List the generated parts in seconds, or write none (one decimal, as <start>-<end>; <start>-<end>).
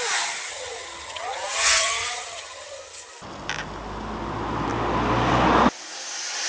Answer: 0.5-3.1